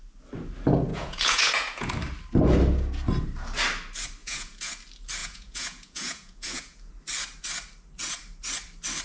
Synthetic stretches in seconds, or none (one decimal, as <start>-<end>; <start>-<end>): 0.9-1.9; 4.2-4.7; 5.2-6.9